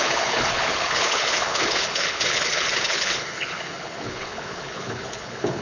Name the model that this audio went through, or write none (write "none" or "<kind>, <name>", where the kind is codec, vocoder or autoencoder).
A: codec, HILCodec